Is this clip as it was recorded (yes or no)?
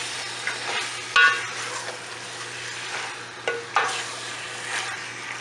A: yes